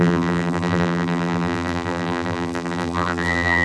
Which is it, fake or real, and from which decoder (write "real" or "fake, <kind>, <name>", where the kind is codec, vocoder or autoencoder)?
fake, vocoder, BigVGAN v2